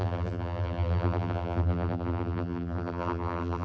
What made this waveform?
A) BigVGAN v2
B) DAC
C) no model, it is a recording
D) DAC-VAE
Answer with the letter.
A